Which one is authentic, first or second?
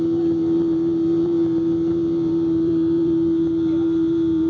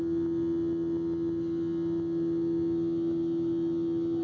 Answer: second